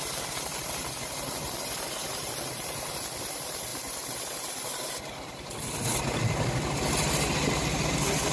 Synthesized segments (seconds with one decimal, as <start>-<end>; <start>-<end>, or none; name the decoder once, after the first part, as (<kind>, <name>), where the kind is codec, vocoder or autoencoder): 2.0-2.9 (vocoder, BigVGAN v2)